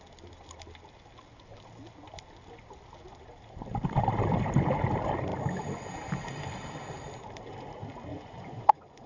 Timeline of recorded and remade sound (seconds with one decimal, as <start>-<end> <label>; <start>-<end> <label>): 0.0-8.1 recorded; 8.1-9.1 remade